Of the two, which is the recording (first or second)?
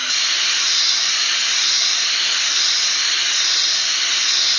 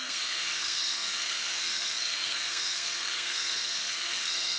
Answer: first